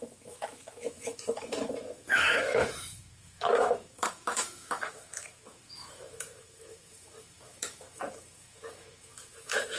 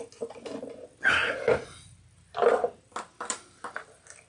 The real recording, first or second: second